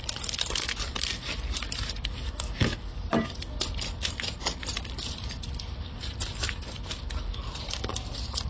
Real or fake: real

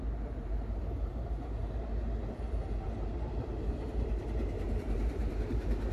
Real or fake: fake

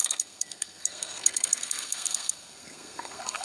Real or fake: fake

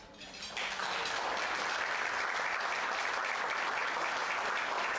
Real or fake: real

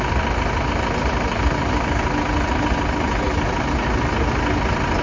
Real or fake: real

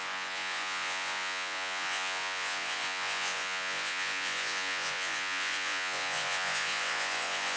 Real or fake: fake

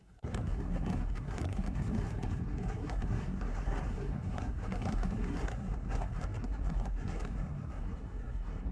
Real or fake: fake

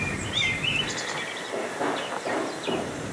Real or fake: fake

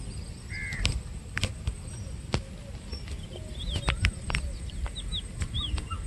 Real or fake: real